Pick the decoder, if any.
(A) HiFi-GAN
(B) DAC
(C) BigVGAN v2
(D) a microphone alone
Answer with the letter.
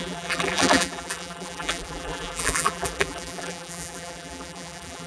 C